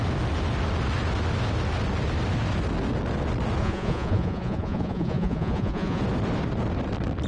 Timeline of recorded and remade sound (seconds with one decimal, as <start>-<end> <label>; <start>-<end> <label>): 0.0-3.6 recorded; 3.6-6.0 remade; 6.0-7.3 recorded